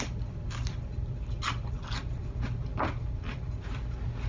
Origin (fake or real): fake